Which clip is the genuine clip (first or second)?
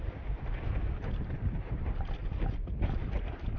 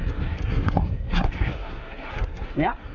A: first